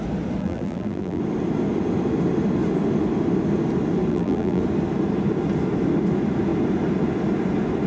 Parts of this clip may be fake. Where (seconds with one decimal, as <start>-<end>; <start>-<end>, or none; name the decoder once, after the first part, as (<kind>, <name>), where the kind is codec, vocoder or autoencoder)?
0.4-1.2 (vocoder, BigVGAN v2); 4.1-4.6